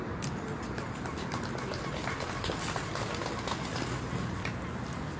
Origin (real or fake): real